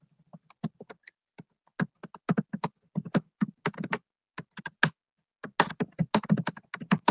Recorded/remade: recorded